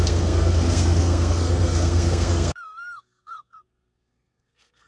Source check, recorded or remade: remade